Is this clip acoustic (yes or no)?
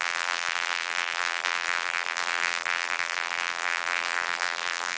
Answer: no